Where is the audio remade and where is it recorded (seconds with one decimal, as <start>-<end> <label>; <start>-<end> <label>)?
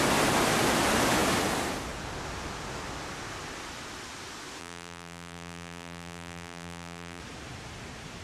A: 0.0-4.6 recorded; 4.6-7.2 remade; 7.2-8.2 recorded